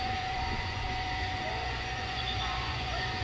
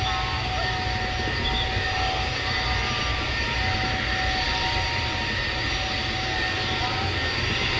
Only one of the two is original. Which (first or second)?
second